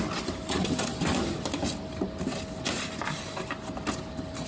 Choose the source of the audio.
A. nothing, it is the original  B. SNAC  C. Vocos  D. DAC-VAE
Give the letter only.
A